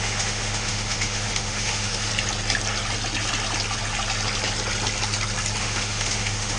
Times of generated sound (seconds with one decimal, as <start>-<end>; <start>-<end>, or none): 0.0-2.1; 5.6-6.6